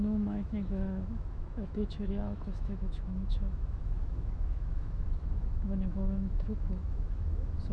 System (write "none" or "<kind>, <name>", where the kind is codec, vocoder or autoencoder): autoencoder, DAC-VAE